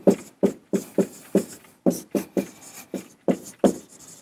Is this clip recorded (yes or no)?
no